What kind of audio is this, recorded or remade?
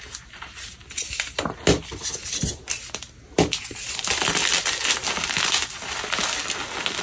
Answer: recorded